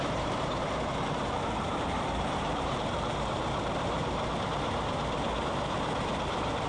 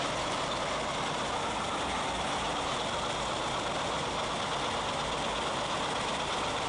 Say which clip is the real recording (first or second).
second